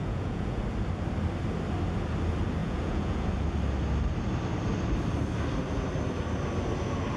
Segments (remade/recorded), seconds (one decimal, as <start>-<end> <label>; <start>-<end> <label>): 0.0-0.6 remade; 0.6-2.6 recorded; 2.6-3.3 remade; 3.3-7.2 recorded